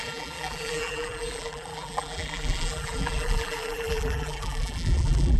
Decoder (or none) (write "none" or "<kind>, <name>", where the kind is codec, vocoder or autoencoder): vocoder, BigVGAN v2